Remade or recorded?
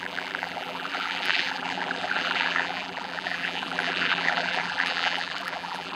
remade